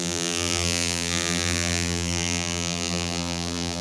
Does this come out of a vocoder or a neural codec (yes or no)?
yes